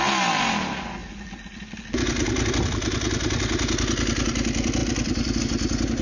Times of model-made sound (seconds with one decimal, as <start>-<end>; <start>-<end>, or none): 4.8-5.4